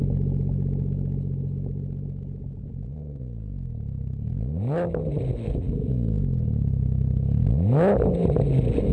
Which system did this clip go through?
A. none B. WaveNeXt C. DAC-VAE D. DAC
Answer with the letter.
A